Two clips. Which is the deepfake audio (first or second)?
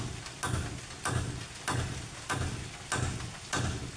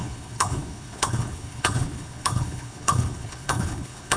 second